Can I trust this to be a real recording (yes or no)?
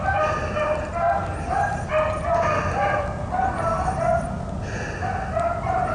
yes